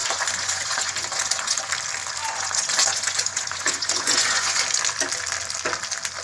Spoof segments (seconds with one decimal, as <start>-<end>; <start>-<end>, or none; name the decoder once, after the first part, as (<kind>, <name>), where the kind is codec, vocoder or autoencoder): 0.0-1.7 (vocoder, Vocos); 2.2-4.6